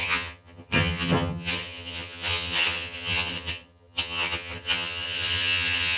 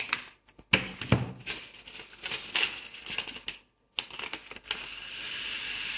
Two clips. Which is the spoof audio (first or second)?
first